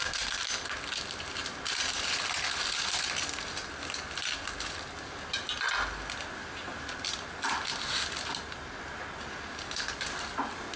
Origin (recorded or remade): recorded